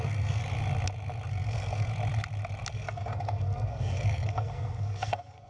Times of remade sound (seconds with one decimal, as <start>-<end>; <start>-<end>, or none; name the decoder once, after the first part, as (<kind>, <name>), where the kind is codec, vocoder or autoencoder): 0.0-0.4 (codec, SNAC); 1.3-1.9; 2.7-5.5